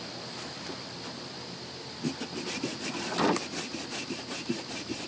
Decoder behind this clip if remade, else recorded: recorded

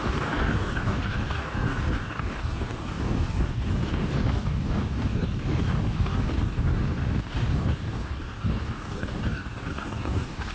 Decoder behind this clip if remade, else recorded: remade, codec, DAC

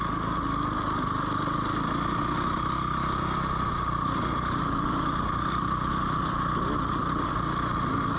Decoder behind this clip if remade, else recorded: recorded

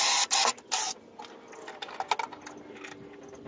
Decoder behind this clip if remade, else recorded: recorded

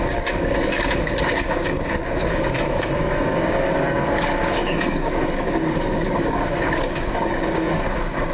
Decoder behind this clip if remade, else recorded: remade, codec, DAC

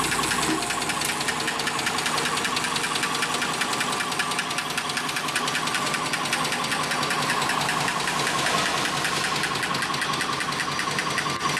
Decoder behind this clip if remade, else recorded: recorded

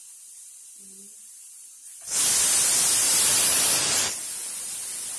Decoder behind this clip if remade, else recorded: recorded